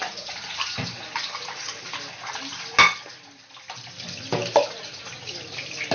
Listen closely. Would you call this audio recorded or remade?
recorded